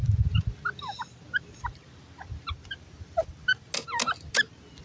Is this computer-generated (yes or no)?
no